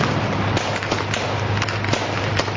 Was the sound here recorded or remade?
recorded